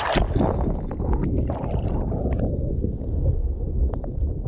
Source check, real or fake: real